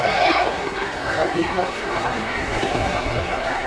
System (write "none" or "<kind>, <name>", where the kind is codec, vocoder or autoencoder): codec, SNAC